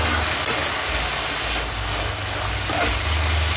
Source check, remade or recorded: recorded